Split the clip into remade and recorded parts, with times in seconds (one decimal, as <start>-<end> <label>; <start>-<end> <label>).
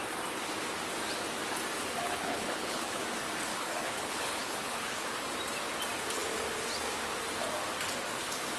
0.0-2.0 recorded; 2.0-3.0 remade; 3.0-3.5 recorded; 3.5-5.0 remade; 5.0-8.6 recorded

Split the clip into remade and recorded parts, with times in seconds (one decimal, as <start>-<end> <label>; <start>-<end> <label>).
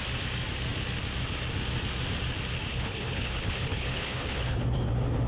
0.0-2.7 recorded; 2.7-4.6 remade; 4.6-5.3 recorded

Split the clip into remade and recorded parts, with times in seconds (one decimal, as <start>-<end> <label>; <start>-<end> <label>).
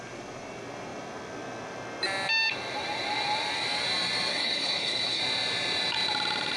0.0-4.3 recorded; 4.3-5.2 remade; 5.2-6.6 recorded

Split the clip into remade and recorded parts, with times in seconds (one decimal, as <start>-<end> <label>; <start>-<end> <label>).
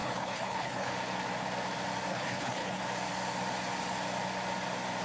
0.0-0.9 remade; 0.9-2.1 recorded; 2.1-2.8 remade; 2.8-5.0 recorded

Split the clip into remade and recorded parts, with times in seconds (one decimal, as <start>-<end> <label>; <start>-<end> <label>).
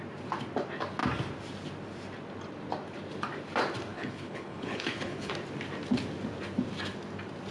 0.0-3.9 recorded; 3.9-5.3 remade; 5.3-7.5 recorded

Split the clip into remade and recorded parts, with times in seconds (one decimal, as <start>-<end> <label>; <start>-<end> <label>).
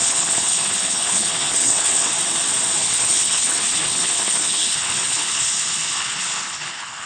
0.0-2.1 remade; 2.1-2.8 recorded; 2.8-7.1 remade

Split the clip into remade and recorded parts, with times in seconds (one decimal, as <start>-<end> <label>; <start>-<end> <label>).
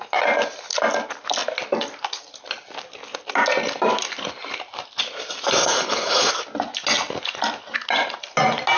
0.0-5.6 recorded; 5.6-6.3 remade; 6.3-8.8 recorded